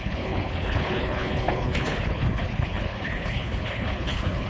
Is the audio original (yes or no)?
no